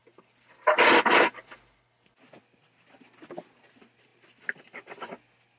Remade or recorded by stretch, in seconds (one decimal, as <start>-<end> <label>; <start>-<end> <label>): 0.0-5.6 recorded